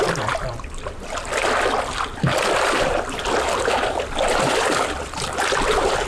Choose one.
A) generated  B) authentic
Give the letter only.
A